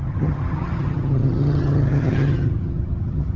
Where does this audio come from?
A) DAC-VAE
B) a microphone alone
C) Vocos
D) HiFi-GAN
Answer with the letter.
D